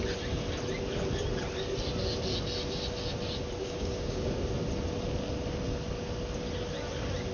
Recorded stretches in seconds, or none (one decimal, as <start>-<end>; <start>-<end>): 0.0-3.6; 4.3-7.3